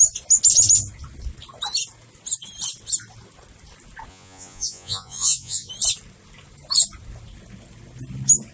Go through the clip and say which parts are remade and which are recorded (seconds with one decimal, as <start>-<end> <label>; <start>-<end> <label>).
0.0-4.1 recorded; 4.1-5.7 remade; 5.7-8.5 recorded